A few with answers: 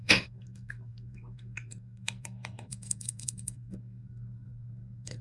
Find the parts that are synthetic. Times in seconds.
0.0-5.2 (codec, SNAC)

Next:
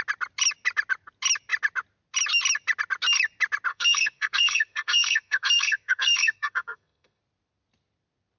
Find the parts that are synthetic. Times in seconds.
3.7-7.2 (codec, SNAC)